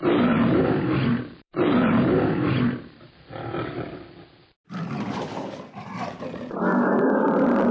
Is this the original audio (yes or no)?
no